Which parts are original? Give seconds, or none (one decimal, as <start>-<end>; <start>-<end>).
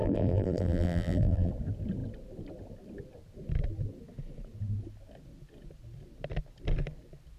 1.5-7.4